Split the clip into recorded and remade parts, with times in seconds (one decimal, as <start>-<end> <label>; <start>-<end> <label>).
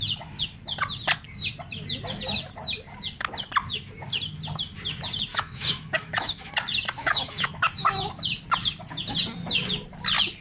0.0-5.3 recorded; 5.3-6.5 remade; 6.5-7.0 recorded; 7.0-8.1 remade; 8.1-10.4 recorded